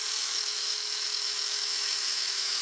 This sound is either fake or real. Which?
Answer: fake